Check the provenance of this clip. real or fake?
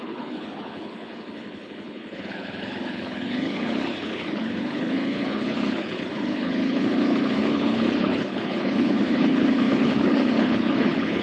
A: fake